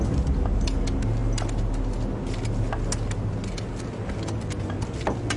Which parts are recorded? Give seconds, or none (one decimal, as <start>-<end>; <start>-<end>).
0.0-5.4